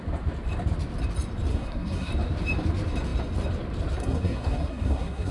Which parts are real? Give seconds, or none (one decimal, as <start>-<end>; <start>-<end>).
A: 0.0-1.5; 2.1-4.0